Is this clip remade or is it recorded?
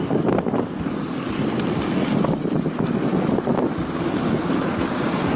recorded